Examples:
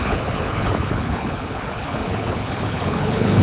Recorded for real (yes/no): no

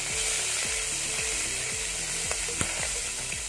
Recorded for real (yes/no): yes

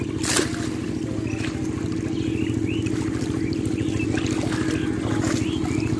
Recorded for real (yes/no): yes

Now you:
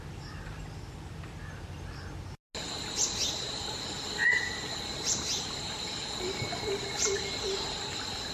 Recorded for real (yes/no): yes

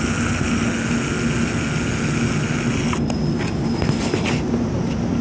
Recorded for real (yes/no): yes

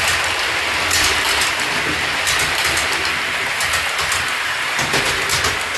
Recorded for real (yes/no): yes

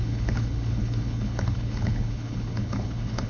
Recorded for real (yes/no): no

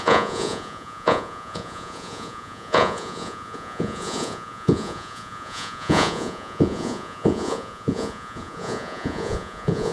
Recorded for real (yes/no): no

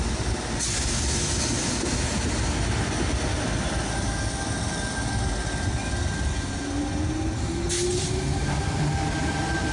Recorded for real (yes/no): yes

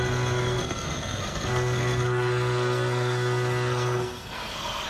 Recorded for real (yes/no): no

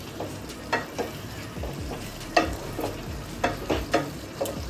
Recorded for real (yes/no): yes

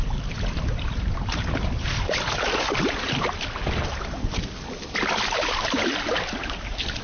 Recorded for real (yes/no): no